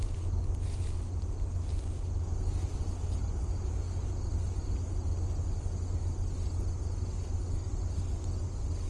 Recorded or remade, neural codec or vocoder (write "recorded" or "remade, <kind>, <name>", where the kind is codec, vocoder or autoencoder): recorded